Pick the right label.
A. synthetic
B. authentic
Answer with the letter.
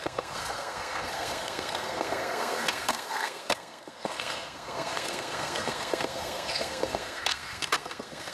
A